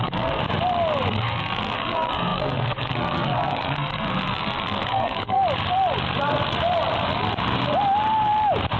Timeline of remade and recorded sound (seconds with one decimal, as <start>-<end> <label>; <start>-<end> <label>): 0.0-0.4 remade; 0.4-1.1 recorded; 1.1-5.4 remade; 5.4-8.8 recorded